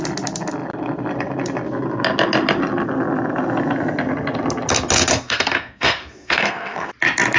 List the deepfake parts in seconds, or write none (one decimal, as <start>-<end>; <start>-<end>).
5.1-6.9